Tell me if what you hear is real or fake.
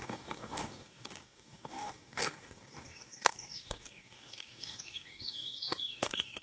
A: fake